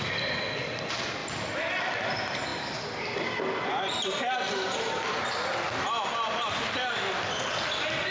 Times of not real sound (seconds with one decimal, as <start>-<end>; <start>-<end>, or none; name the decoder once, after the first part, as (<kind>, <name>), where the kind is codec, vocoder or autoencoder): none